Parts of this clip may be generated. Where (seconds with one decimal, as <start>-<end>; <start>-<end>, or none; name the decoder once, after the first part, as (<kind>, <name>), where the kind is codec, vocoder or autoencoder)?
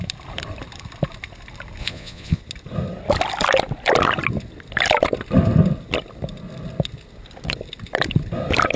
1.8-2.4 (vocoder, Vocos)